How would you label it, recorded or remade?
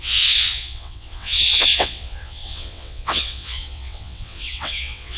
remade